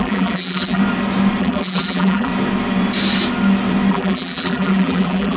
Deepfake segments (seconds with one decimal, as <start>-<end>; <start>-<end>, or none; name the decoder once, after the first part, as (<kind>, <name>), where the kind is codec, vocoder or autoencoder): 0.0-0.8 (vocoder, BigVGAN v2); 1.4-2.3; 3.9-5.4